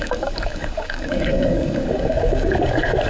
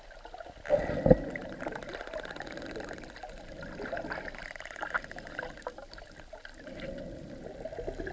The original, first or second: second